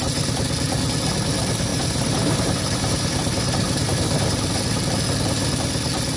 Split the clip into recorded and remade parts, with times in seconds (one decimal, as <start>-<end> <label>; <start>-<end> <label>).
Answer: 0.0-1.7 recorded; 1.7-4.0 remade; 4.0-6.2 recorded